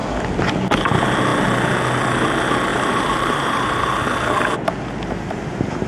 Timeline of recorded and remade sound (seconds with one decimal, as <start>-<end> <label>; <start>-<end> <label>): 0.0-2.7 recorded; 2.7-4.0 remade; 4.0-5.9 recorded